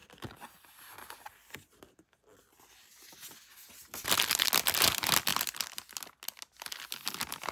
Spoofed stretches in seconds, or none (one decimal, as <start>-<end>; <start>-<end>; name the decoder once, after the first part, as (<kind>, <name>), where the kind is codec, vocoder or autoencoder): none